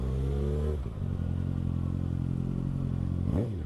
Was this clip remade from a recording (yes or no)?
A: no